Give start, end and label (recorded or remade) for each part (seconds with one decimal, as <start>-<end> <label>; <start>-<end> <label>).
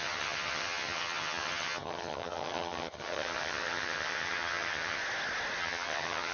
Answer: 0.0-5.0 remade; 5.0-5.6 recorded; 5.6-6.3 remade